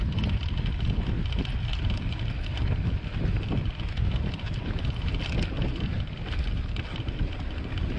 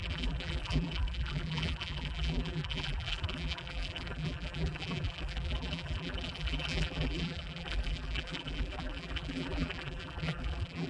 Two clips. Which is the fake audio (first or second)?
second